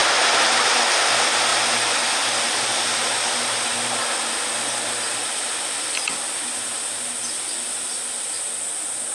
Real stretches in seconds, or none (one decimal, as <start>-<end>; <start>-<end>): 0.0-9.1